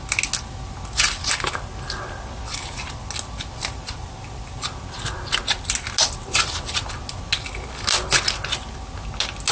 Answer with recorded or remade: recorded